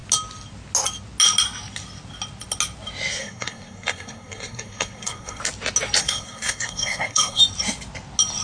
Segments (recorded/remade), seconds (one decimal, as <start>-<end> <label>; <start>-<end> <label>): 0.0-3.2 recorded; 3.2-5.4 remade; 5.4-6.0 recorded; 6.0-7.4 remade; 7.4-8.4 recorded

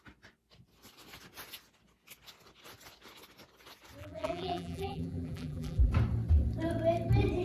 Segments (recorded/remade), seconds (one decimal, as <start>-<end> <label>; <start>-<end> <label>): 0.0-4.0 recorded; 4.0-5.9 remade; 5.9-7.4 recorded

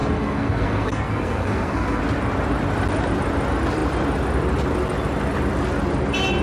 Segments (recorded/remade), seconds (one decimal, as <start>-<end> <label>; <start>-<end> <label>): 0.0-2.0 remade; 2.0-6.4 recorded

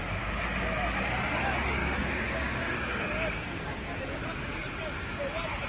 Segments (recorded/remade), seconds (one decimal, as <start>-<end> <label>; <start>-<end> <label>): 0.0-1.8 recorded; 1.8-4.0 remade; 4.0-5.7 recorded

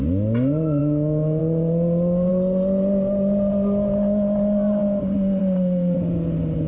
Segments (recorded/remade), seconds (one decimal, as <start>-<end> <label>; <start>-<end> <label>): 0.0-0.8 recorded; 0.8-1.4 remade; 1.4-6.7 recorded

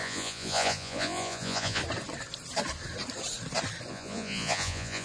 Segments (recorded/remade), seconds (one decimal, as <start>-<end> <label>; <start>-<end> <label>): 0.0-1.8 remade; 1.8-3.9 recorded; 3.9-5.0 remade

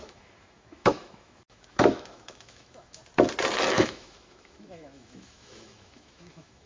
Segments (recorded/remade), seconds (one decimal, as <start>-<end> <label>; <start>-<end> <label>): 0.0-3.0 remade; 3.0-3.7 recorded; 3.7-6.7 remade